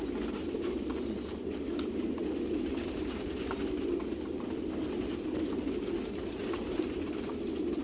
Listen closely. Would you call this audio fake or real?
real